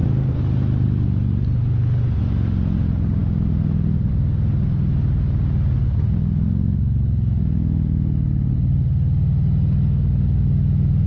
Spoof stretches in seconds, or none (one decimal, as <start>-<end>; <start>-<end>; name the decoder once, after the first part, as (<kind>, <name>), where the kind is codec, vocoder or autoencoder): none